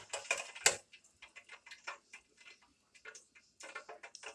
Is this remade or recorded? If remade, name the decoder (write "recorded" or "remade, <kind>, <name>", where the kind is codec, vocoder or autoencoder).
recorded